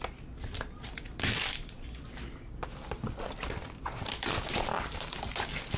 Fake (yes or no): no